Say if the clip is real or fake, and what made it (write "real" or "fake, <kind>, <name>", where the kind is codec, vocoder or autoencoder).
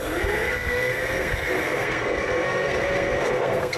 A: fake, codec, SNAC